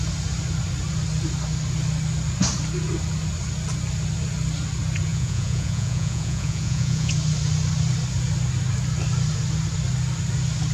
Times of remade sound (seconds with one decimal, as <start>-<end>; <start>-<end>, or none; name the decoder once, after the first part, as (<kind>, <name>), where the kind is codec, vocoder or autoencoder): 5.1-7.1 (vocoder, Vocos)